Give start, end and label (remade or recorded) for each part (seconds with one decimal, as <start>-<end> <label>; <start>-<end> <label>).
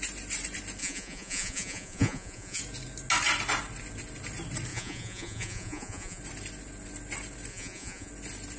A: 0.0-0.8 recorded; 0.8-2.6 remade; 2.6-4.7 recorded; 4.7-6.2 remade; 6.2-7.5 recorded; 7.5-8.1 remade; 8.1-8.6 recorded